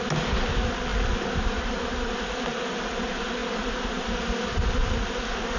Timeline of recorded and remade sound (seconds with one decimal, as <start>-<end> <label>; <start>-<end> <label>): 0.0-5.6 recorded